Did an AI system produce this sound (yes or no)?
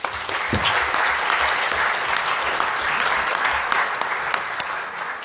no